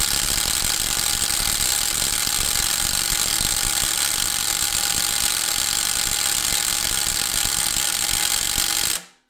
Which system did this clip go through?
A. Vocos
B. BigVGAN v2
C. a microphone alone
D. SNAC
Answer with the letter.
C